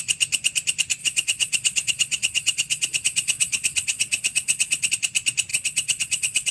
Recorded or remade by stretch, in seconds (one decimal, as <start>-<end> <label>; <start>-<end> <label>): 0.0-1.0 recorded; 1.0-4.9 remade; 4.9-5.5 recorded; 5.5-6.5 remade